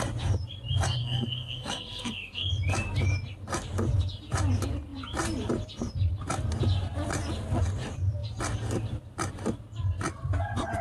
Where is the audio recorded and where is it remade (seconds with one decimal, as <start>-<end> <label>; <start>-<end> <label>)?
0.0-1.0 recorded; 1.0-2.5 remade; 2.5-10.8 recorded

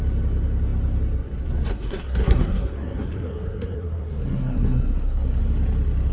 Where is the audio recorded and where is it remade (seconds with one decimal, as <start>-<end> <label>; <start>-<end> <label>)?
0.0-1.7 recorded; 1.7-5.4 remade; 5.4-6.1 recorded